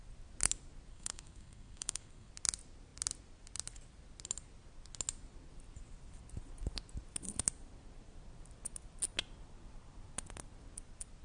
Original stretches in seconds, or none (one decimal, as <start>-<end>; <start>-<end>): 0.0-0.9; 2.3-11.2